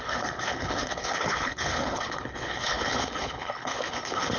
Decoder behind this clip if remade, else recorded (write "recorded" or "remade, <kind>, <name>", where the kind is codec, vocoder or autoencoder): remade, codec, HILCodec